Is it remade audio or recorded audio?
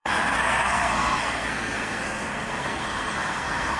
remade